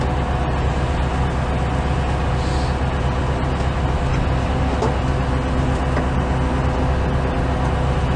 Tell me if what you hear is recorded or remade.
recorded